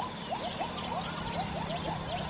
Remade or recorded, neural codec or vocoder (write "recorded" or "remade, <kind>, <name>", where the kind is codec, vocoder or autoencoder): recorded